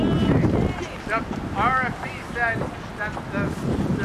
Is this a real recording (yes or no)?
yes